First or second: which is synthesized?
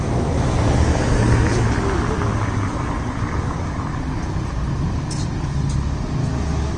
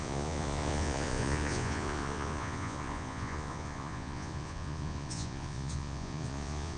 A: second